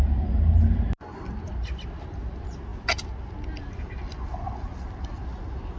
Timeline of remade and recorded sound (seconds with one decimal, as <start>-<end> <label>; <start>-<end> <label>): 0.0-5.8 recorded